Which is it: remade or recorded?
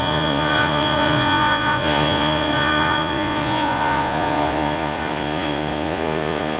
remade